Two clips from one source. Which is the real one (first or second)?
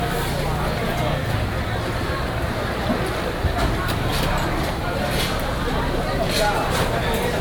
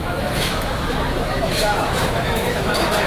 first